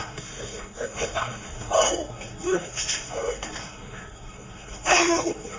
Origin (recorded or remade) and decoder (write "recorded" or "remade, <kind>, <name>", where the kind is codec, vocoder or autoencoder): remade, codec, SNAC